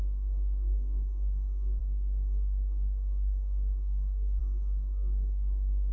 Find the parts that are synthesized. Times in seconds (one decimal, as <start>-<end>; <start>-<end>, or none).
0.0-5.9